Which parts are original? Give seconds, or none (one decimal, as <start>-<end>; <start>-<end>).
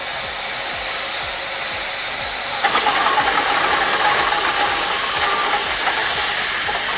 0.0-7.0